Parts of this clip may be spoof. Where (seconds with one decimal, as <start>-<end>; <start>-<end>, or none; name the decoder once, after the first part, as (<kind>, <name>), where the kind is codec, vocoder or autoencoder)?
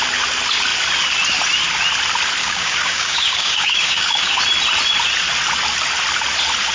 2.4-4.4 (codec, DAC)